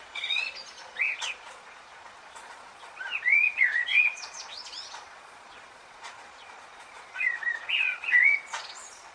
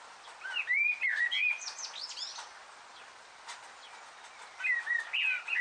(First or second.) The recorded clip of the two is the second